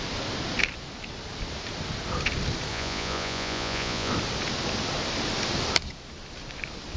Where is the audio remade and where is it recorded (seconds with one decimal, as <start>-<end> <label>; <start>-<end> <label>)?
0.0-2.7 recorded; 2.7-4.1 remade; 4.1-7.0 recorded